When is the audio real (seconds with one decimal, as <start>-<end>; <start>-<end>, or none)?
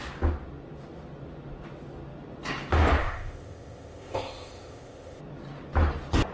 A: 0.0-3.0; 5.2-6.3